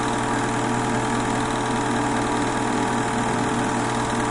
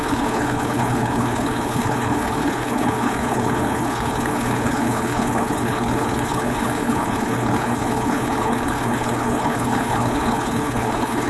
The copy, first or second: second